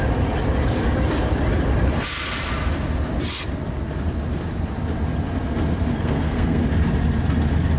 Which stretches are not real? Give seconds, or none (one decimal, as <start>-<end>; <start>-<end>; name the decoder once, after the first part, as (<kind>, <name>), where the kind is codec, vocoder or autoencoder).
5.9-6.6 (codec, SNAC)